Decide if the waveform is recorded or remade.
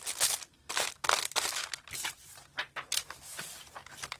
recorded